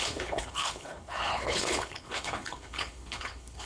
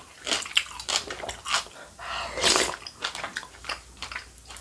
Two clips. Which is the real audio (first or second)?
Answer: second